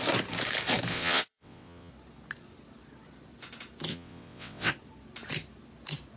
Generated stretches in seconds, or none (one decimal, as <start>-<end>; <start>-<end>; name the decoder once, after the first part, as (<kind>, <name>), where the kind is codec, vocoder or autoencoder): 0.9-1.9 (vocoder, WaveNeXt); 3.9-4.7